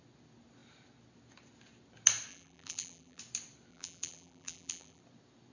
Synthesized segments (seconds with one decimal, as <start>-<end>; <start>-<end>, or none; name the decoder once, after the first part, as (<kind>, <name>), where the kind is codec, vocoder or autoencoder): 2.3-3.2 (vocoder, BigVGAN v2); 3.7-5.0